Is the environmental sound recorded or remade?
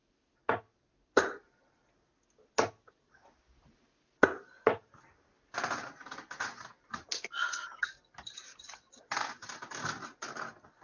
recorded